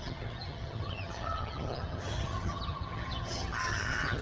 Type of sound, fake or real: fake